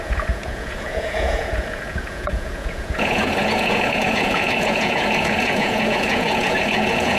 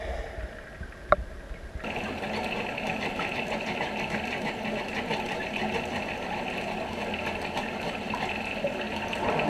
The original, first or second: second